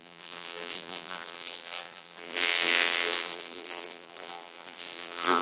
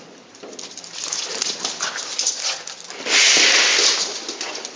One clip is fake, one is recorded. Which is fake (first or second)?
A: first